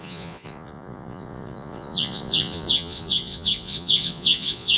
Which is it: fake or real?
fake